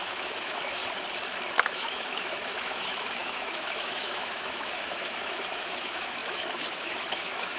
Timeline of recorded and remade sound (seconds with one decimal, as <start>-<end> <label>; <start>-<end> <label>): 0.0-0.8 remade; 0.8-1.5 recorded; 1.5-7.6 remade